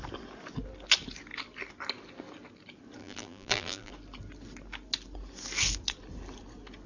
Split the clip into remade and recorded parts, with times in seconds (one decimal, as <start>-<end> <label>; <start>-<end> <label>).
0.0-3.0 recorded; 3.0-3.9 remade; 3.9-6.9 recorded